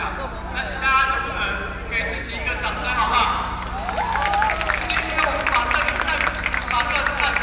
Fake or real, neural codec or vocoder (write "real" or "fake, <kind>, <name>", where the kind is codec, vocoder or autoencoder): real